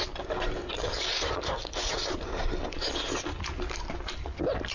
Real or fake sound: real